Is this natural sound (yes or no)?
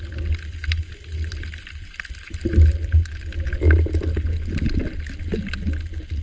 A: yes